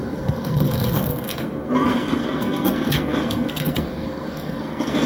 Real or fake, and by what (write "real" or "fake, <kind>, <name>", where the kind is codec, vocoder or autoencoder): fake, codec, SNAC